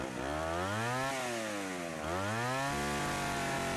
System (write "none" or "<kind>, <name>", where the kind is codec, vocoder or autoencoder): none